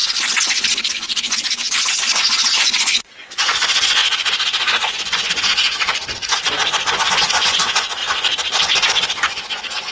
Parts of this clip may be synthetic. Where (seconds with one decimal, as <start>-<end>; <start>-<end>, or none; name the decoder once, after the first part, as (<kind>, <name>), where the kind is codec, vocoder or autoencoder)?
0.9-8.0 (vocoder, Vocos); 8.6-9.9